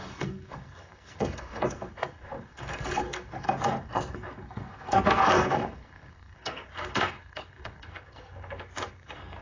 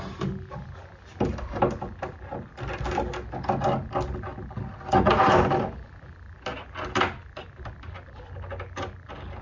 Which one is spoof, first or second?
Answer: first